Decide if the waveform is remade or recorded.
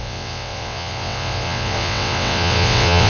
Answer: remade